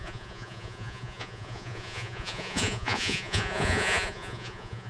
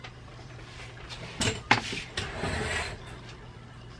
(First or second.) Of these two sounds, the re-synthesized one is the first